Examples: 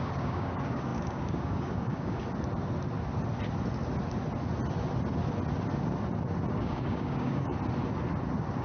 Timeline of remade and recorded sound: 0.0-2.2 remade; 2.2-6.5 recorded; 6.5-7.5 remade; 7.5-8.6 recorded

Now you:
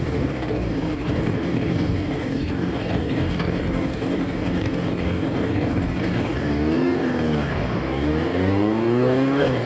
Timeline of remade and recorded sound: 0.0-9.7 remade

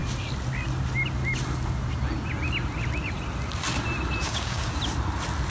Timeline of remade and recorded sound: 0.0-4.2 recorded; 4.2-4.7 remade; 4.7-5.5 recorded

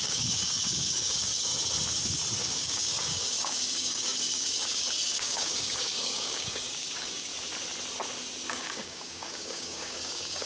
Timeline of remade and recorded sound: 0.0-1.5 remade; 1.5-2.4 recorded; 2.4-7.3 remade; 7.3-8.5 recorded; 8.5-10.5 remade